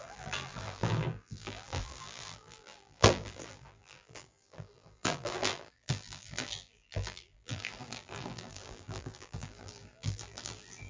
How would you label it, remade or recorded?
remade